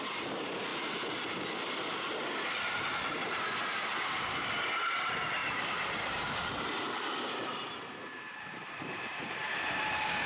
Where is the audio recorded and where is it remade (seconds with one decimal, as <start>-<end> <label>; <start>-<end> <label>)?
0.0-5.4 recorded; 5.4-10.3 remade